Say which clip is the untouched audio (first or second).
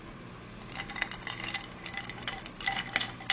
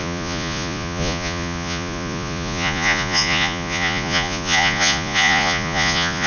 first